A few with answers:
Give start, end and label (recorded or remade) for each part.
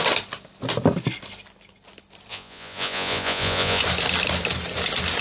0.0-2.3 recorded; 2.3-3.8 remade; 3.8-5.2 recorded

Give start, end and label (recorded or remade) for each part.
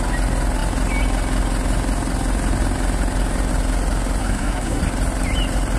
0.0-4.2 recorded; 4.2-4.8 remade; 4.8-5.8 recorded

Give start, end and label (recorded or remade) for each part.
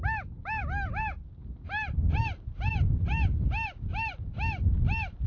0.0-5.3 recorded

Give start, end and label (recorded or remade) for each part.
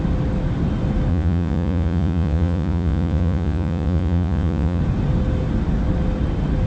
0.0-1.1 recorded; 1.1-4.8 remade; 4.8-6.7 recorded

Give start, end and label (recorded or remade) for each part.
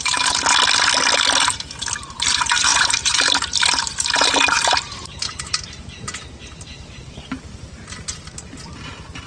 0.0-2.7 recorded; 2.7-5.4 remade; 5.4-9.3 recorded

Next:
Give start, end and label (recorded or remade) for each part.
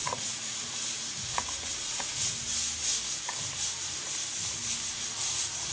0.0-2.3 remade; 2.3-5.7 recorded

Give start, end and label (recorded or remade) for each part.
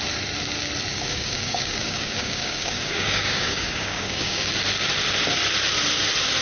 0.0-0.9 recorded; 0.9-4.5 remade; 4.5-6.4 recorded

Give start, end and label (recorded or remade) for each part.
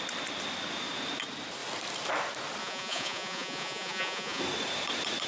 0.0-2.6 recorded; 2.6-4.4 remade; 4.4-5.3 recorded